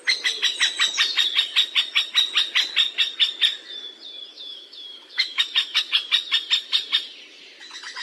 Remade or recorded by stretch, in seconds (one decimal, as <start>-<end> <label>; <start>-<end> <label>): 0.0-4.3 recorded; 4.3-5.9 remade; 5.9-8.0 recorded